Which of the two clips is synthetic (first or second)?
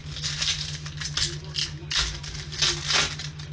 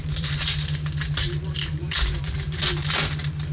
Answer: second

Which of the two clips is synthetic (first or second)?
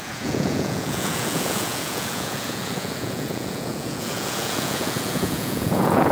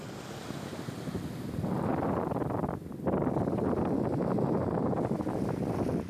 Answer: first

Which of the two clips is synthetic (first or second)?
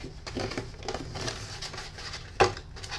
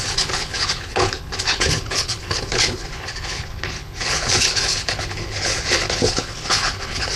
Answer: second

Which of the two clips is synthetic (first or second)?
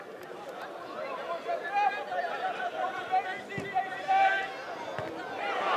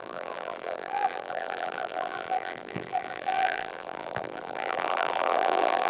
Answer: second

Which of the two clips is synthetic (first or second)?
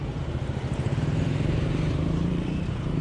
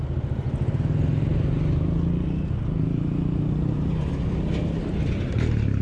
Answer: first